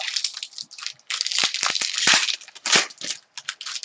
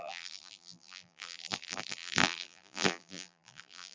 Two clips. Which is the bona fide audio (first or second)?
first